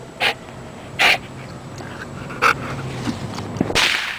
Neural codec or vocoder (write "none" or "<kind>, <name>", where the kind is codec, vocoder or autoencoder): none